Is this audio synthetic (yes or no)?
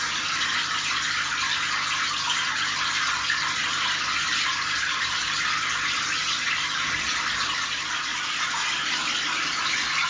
no